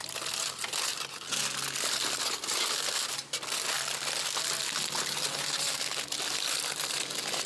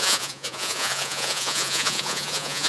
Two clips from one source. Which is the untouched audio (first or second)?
first